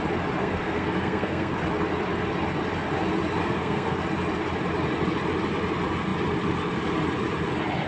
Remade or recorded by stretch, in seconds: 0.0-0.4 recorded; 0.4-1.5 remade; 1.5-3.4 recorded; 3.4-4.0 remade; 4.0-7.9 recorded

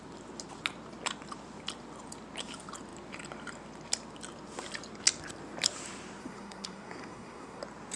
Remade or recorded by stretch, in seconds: 0.0-6.2 recorded; 6.2-7.6 remade; 7.6-8.0 recorded

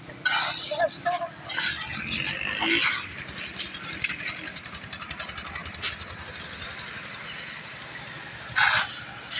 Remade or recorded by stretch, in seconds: 0.0-9.4 recorded

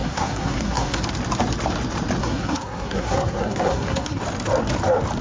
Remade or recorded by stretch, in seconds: 0.0-1.0 remade; 1.0-2.2 recorded; 2.2-4.2 remade; 4.2-5.2 recorded

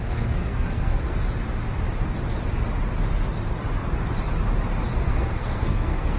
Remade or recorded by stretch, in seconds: 0.0-1.2 remade; 1.2-4.9 recorded; 4.9-6.2 remade

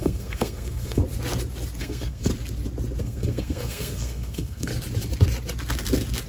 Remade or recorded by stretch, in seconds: 0.0-1.0 remade; 1.0-1.8 recorded; 1.8-2.3 remade; 2.3-3.0 recorded; 3.0-4.7 remade; 4.7-6.3 recorded

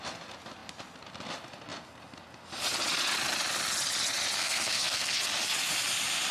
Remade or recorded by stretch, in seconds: 0.0-4.4 recorded; 4.4-5.1 remade; 5.1-6.3 recorded